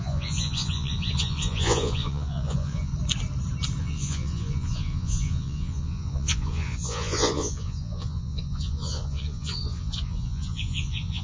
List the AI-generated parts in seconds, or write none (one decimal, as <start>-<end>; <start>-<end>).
0.0-2.9; 3.8-11.2